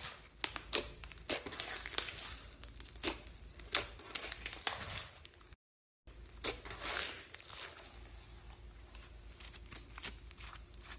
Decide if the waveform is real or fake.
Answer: real